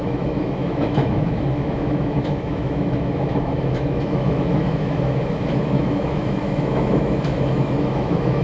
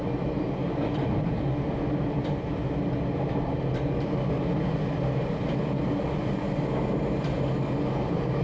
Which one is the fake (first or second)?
first